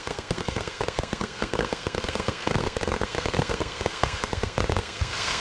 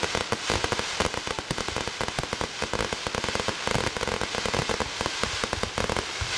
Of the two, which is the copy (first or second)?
first